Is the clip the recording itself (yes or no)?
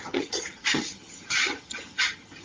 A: no